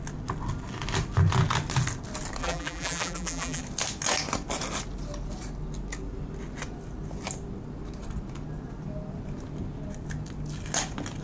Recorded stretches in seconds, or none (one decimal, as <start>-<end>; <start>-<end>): 0.0-2.4; 3.6-11.2